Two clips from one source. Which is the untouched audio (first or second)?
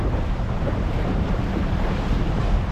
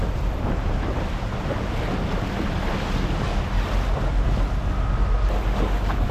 second